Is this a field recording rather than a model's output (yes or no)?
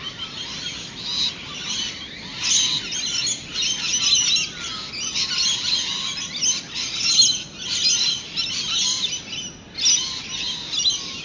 yes